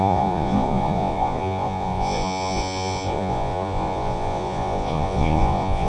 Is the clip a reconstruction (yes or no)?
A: yes